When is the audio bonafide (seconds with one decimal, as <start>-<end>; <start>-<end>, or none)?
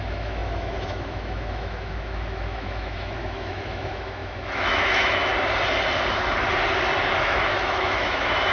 5.3-7.2